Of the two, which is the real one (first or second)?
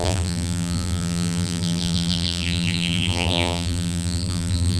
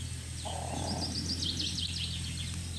second